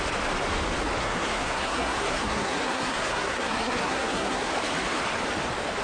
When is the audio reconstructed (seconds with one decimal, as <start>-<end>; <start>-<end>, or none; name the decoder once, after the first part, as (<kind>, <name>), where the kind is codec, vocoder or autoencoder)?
1.0-4.5 (codec, SNAC)